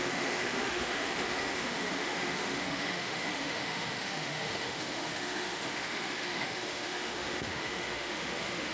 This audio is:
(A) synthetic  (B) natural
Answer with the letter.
A